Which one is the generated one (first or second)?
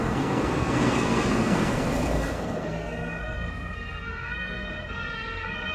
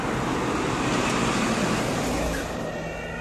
first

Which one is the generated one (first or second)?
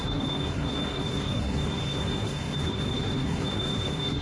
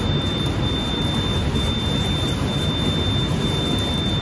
first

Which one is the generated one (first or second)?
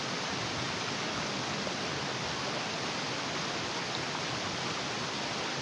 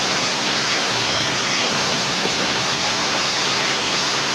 second